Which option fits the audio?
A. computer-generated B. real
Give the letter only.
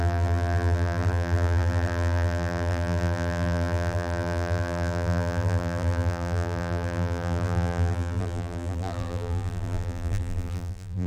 A